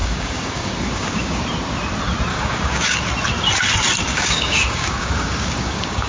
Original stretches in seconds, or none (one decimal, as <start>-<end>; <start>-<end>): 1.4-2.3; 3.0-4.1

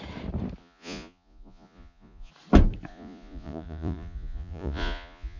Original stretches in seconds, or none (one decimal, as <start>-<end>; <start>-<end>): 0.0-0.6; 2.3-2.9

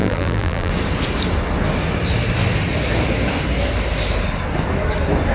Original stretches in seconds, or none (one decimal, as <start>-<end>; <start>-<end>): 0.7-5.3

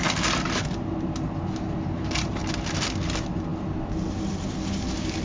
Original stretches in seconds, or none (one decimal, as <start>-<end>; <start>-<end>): 0.0-5.2

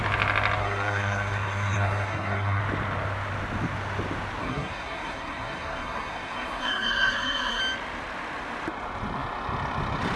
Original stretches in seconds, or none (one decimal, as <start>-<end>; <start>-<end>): 0.0-0.6; 2.6-4.4; 7.6-10.2

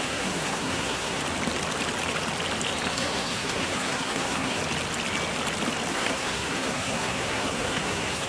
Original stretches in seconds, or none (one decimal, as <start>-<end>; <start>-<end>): 1.2-2.9; 4.6-5.9